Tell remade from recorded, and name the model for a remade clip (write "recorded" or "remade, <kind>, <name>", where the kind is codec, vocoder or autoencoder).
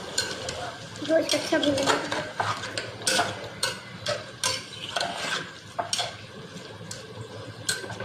recorded